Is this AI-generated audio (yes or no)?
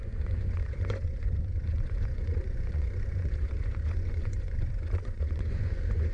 yes